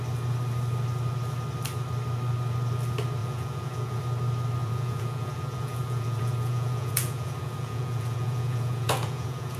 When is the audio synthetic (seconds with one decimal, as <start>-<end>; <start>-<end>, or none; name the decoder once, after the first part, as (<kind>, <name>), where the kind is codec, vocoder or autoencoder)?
3.2-4.0 (vocoder, Vocos); 4.6-9.6